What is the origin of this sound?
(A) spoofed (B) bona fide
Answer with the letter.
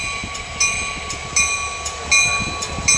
B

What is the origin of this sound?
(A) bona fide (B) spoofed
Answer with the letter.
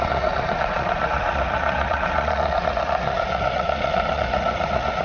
B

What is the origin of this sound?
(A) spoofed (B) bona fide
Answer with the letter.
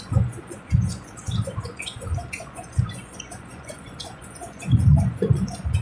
A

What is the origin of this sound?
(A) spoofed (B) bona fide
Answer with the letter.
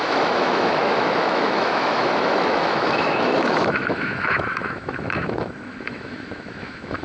A